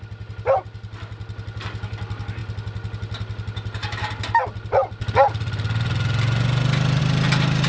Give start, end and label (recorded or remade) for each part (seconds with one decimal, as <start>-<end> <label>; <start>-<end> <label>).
0.0-7.7 recorded